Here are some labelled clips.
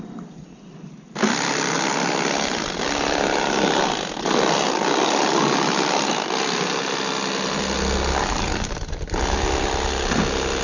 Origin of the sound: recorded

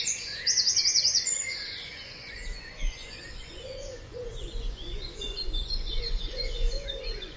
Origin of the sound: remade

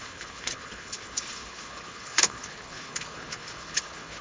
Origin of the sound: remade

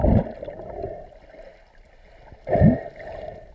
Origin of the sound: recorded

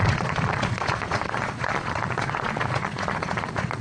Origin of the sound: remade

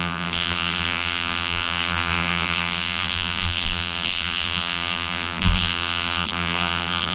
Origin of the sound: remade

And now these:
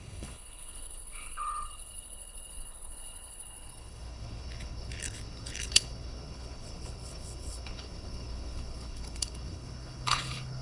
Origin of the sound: remade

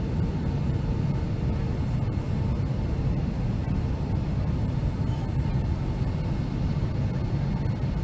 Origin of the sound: remade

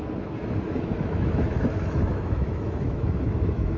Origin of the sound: remade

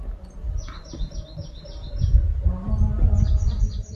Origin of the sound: recorded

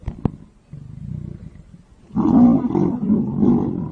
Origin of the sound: recorded